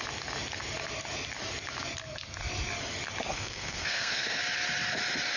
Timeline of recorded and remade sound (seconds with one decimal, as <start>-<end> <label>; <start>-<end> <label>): 0.0-3.3 recorded; 3.3-4.4 remade; 4.4-5.4 recorded